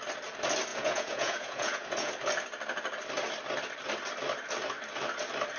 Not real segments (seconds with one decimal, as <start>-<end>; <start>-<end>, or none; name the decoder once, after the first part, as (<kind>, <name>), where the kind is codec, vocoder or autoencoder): 0.7-2.1 (vocoder, Vocos)